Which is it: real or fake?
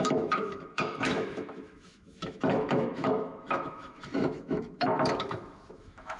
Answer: fake